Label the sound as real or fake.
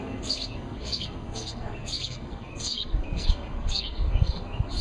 fake